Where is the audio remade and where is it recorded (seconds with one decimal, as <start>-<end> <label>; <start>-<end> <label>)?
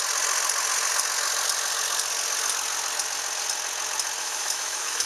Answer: 0.0-4.2 recorded; 4.2-5.1 remade